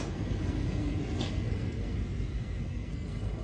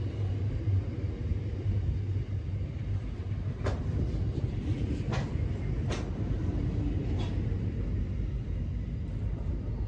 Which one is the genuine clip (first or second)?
second